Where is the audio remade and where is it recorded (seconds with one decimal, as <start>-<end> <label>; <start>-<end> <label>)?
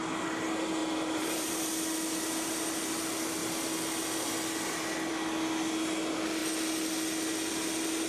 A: 0.0-0.8 recorded; 0.8-1.7 remade; 1.7-8.1 recorded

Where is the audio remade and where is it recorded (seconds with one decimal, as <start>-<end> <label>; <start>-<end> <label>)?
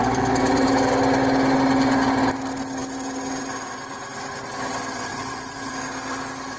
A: 0.0-0.9 remade; 0.9-5.1 recorded; 5.1-5.7 remade; 5.7-6.6 recorded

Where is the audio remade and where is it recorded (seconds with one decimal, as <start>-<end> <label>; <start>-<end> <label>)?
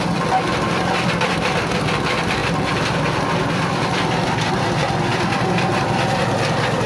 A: 0.0-6.9 recorded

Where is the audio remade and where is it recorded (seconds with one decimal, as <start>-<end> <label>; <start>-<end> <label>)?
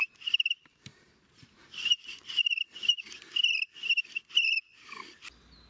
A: 0.0-0.9 recorded; 0.9-2.3 remade; 2.3-5.7 recorded